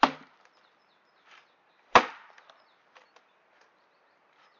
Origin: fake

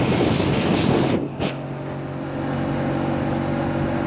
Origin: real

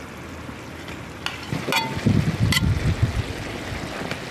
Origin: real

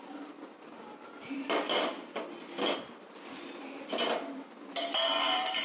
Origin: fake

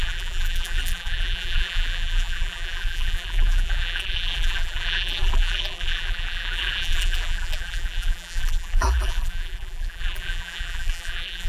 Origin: fake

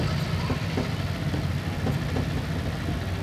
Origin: real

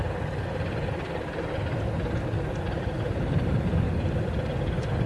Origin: real